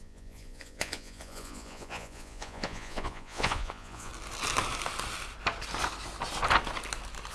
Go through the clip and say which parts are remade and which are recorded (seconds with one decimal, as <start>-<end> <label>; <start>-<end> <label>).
0.0-4.1 remade; 4.1-7.3 recorded